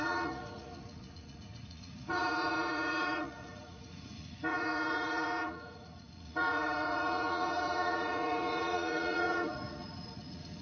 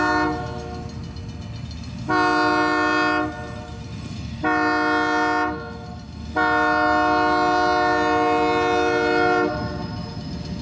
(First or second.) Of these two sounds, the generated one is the first